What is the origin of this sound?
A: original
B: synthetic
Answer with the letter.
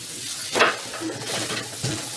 B